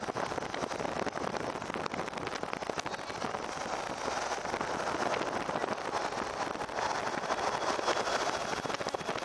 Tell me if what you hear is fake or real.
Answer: real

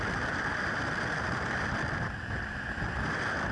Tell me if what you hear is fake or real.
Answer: real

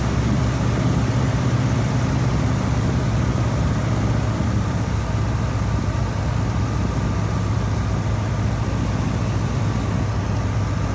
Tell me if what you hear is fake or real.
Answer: real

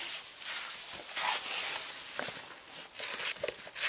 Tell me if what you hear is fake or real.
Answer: real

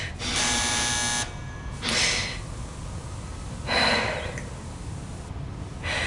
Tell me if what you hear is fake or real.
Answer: real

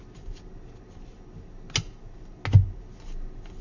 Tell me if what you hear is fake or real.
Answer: real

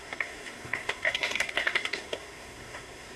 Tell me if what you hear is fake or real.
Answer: fake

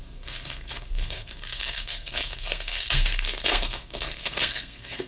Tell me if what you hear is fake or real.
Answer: fake